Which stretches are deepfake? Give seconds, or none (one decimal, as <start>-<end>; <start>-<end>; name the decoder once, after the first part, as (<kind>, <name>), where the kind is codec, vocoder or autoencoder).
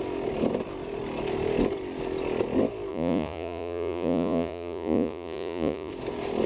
2.9-5.9 (vocoder, Vocos)